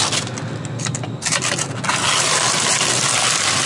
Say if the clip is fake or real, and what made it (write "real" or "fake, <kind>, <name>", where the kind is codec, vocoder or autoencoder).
real